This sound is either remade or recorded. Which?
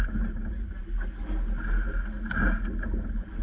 recorded